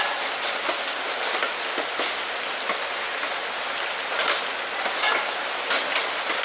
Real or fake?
real